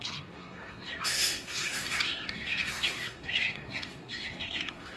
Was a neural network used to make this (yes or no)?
yes